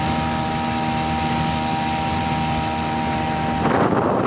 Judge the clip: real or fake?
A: real